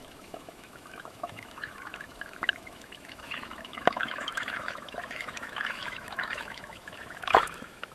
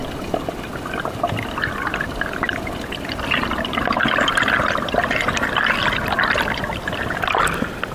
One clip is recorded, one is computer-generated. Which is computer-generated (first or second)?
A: first